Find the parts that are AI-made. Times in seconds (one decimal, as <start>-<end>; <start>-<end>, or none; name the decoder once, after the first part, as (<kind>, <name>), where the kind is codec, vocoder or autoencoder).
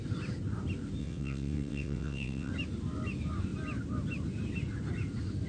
1.0-2.5 (vocoder, WaveNeXt)